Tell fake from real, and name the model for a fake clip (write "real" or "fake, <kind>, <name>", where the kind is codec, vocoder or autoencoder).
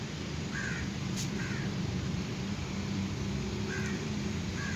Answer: fake, vocoder, BigVGAN v2